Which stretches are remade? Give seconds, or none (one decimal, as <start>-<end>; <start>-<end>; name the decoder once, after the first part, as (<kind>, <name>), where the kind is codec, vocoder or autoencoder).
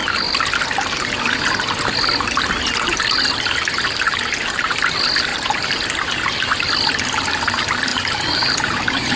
7.9-9.2 (vocoder, BigVGAN v2)